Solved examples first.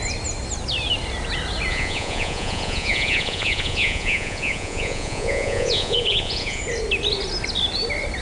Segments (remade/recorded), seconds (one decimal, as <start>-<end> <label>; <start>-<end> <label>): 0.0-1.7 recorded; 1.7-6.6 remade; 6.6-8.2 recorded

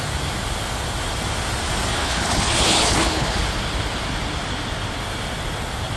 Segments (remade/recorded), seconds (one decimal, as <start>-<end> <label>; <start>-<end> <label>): 0.0-1.9 recorded; 1.9-3.4 remade; 3.4-6.0 recorded

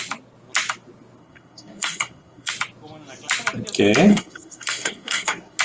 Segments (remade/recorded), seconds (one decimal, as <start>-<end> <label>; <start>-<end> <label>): 0.0-1.2 recorded; 1.2-2.5 remade; 2.5-4.1 recorded; 4.1-5.6 remade

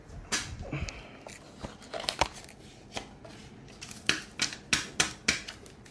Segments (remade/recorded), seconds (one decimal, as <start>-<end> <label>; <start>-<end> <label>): 0.0-5.9 recorded